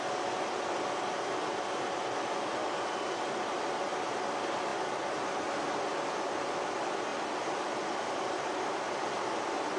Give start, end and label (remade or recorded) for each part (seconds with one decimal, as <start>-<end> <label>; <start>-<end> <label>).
0.0-9.8 recorded